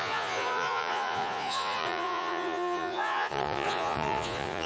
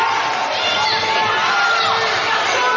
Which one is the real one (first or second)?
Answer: second